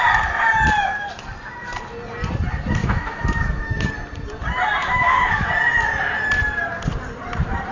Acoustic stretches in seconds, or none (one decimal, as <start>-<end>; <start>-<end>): 0.0-2.8; 3.9-4.8; 5.5-7.7